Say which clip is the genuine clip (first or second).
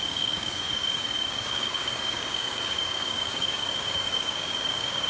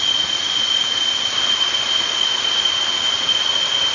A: second